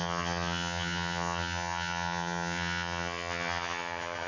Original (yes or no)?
no